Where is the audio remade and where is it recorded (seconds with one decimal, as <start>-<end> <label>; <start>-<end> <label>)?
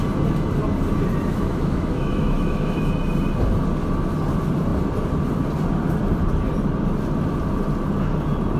0.0-1.3 recorded; 1.3-2.9 remade; 2.9-8.6 recorded